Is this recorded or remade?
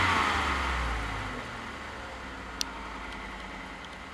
recorded